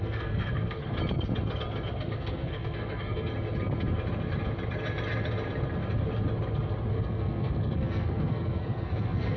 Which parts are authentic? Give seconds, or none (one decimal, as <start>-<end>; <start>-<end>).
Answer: 0.8-1.9; 3.3-6.9